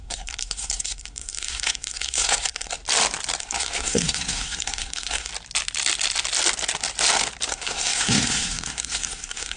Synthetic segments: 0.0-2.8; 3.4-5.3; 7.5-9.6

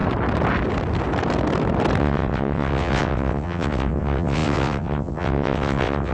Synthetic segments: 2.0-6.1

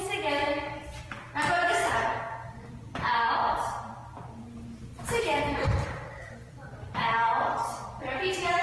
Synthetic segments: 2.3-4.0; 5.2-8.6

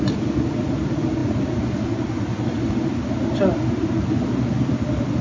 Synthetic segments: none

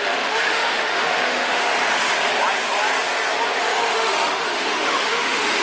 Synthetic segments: 0.0-1.8; 3.6-5.6

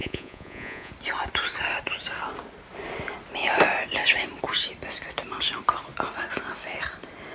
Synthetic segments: 0.0-0.9